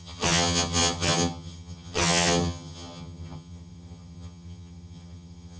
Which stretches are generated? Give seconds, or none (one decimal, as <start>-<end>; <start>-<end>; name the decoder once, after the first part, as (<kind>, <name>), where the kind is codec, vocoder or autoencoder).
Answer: 0.0-5.6 (vocoder, HiFi-GAN)